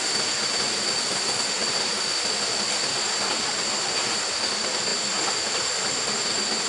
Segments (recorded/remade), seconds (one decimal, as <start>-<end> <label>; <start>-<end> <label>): 0.0-6.7 recorded